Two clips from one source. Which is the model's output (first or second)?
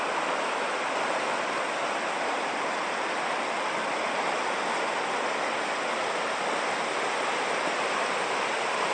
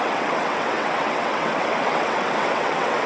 second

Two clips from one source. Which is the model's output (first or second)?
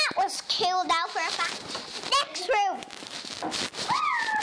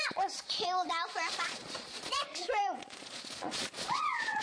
second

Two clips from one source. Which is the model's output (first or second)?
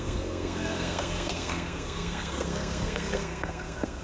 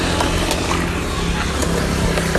first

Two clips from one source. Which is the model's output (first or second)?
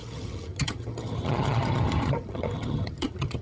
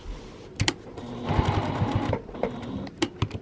first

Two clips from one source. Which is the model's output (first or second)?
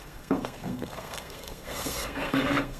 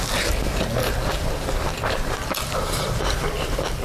first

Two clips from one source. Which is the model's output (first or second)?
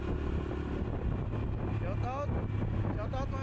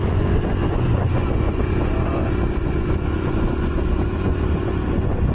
second